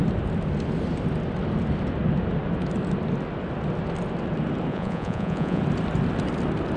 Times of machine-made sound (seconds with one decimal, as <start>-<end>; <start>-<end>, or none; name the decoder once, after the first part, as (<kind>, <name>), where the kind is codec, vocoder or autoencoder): 4.7-5.6 (vocoder, Vocos)